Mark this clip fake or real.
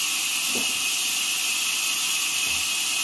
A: real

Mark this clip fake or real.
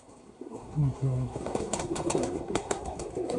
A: fake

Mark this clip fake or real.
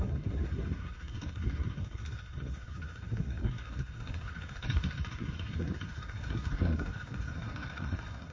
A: fake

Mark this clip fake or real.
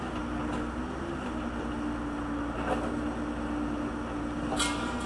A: real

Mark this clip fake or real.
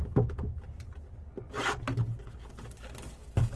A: real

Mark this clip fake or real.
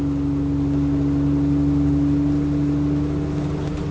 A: real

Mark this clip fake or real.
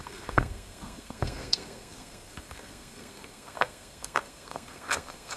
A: fake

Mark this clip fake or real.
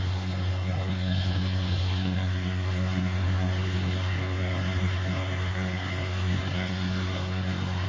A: fake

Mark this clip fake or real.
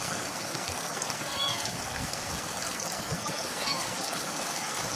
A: fake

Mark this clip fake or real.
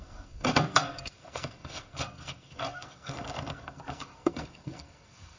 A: fake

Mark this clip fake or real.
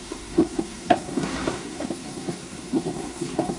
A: fake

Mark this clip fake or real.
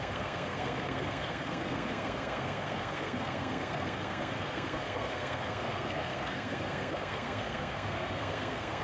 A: fake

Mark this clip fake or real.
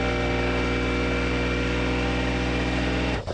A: real